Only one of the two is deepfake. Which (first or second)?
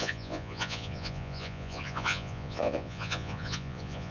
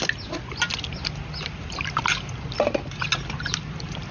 first